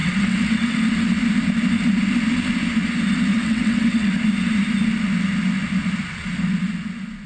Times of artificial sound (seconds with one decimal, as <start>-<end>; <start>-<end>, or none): 0.0-0.8; 3.3-4.2